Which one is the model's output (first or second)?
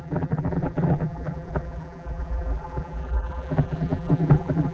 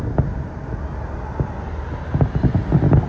first